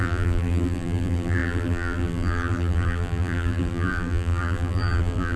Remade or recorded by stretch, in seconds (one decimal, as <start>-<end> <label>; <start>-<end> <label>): 0.0-5.4 remade